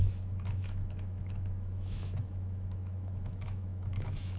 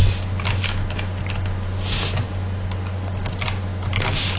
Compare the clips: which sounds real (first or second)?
second